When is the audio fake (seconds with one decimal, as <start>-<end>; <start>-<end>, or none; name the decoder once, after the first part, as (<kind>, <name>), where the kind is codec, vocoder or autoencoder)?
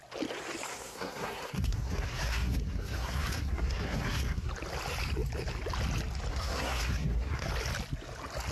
0.7-4.5 (codec, SNAC); 6.3-7.5